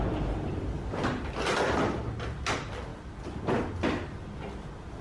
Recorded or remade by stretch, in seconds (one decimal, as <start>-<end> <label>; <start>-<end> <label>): 0.0-5.0 recorded